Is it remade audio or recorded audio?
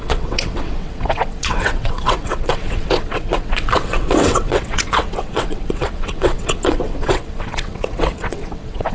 remade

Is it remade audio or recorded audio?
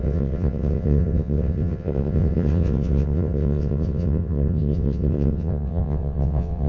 remade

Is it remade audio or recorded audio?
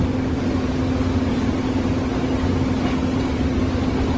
recorded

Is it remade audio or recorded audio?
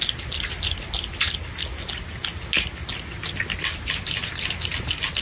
recorded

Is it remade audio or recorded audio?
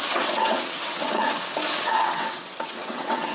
remade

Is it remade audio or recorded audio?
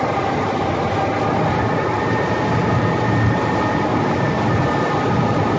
recorded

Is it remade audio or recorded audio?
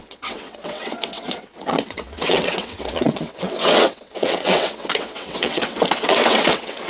remade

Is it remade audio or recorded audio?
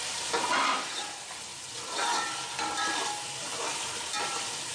recorded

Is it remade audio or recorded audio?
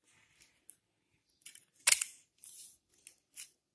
recorded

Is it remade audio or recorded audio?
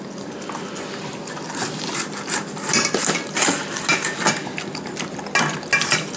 recorded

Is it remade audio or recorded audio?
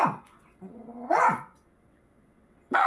remade